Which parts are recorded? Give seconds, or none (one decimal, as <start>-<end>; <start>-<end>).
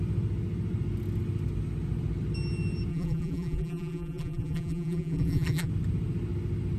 0.0-2.9; 5.7-6.8